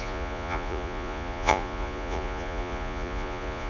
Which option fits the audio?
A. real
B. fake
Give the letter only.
B